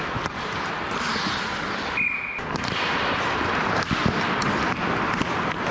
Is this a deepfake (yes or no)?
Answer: no